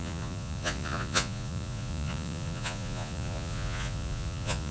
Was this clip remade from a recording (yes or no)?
yes